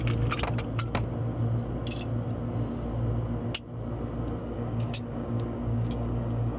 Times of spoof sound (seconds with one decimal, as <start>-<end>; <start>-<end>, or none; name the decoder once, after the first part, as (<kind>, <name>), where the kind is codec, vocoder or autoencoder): 4.4-6.6 (codec, DAC)